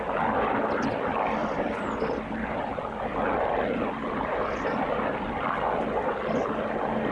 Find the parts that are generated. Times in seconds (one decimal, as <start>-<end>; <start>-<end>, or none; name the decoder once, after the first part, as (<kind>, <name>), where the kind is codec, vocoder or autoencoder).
none